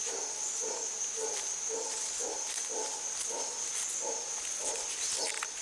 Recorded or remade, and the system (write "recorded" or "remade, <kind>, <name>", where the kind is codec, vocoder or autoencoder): recorded